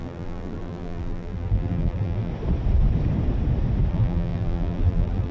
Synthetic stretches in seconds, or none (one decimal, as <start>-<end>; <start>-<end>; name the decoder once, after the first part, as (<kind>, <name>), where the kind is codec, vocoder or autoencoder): 0.0-2.3 (vocoder, BigVGAN v2); 3.9-5.3